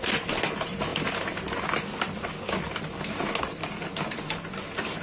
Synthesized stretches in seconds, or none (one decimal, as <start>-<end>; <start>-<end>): none